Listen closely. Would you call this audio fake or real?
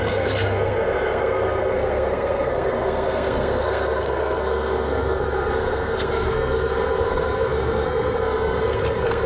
fake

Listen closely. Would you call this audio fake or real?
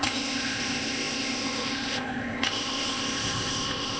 fake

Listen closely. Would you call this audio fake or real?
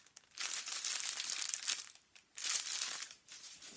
real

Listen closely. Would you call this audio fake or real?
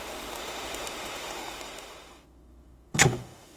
fake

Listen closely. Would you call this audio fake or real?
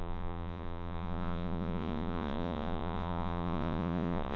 fake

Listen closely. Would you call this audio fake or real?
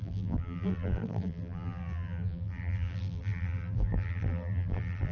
fake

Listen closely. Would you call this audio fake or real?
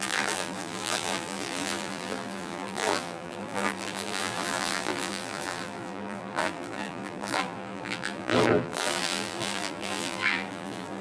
fake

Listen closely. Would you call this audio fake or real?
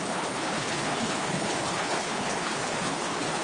fake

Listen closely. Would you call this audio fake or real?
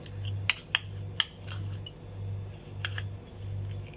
real